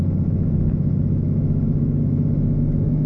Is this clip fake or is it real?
fake